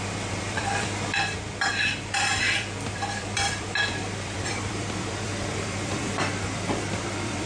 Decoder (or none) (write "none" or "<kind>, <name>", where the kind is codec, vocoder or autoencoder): vocoder, BigVGAN v2